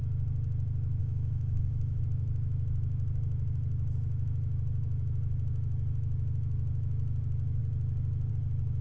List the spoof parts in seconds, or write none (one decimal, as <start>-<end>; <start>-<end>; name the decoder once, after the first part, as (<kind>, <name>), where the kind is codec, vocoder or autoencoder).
1.0-2.0 (autoencoder, DAC-VAE)